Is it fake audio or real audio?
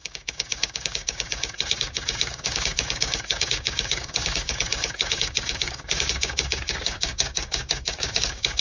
fake